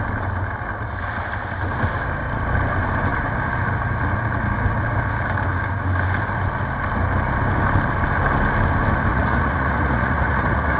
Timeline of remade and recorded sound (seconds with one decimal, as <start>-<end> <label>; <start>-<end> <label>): 0.0-9.1 recorded; 9.1-10.8 remade